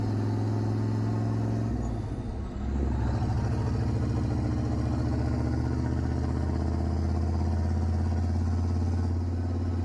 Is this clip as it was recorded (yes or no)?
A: yes